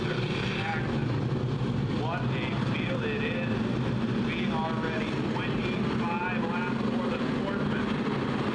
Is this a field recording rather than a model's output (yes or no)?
yes